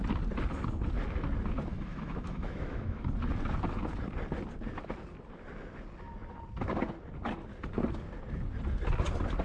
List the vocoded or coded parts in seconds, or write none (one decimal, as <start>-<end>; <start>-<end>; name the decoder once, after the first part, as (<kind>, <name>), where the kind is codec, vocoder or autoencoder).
1.7-3.1 (autoencoder, DAC-VAE)